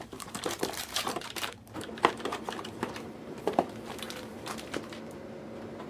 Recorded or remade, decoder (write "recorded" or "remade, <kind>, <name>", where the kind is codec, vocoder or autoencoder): remade, vocoder, BigVGAN v2